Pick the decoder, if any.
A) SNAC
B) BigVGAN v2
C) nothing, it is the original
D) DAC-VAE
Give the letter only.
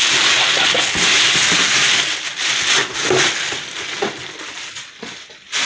C